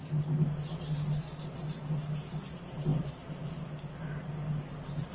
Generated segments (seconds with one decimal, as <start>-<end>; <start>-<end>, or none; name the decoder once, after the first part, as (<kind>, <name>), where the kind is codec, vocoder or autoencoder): none